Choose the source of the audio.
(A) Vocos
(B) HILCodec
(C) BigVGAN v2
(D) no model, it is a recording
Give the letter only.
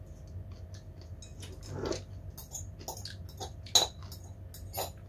D